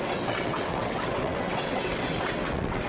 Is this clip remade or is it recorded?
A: remade